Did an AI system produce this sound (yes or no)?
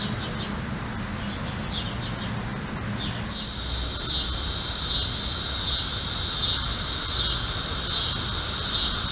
no